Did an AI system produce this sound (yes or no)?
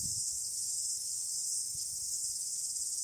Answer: no